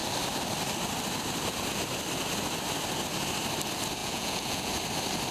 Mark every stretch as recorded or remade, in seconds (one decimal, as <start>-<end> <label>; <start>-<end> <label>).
0.0-4.0 recorded; 4.0-4.7 remade; 4.7-5.3 recorded